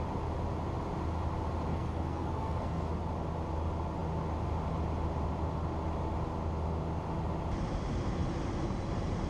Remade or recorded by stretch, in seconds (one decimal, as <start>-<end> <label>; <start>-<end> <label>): 0.0-1.7 recorded; 1.7-2.9 remade; 2.9-9.3 recorded